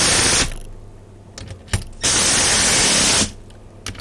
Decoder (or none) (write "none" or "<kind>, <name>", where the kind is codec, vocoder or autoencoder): none